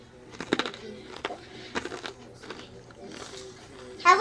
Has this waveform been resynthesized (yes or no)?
no